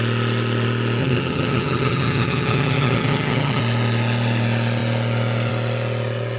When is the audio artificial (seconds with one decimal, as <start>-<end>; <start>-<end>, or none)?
1.0-3.6